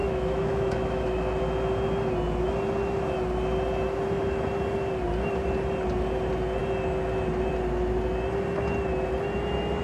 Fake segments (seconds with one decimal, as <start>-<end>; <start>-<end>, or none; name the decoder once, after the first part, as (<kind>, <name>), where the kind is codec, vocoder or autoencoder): 0.0-1.4 (autoencoder, DAC-VAE)